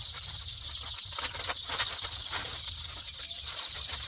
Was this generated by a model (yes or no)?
no